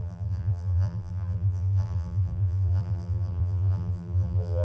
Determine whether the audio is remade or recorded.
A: remade